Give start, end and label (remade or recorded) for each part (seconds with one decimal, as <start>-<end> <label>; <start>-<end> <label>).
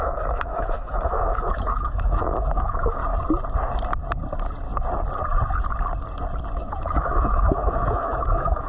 0.0-3.0 remade; 3.0-6.5 recorded; 6.5-8.7 remade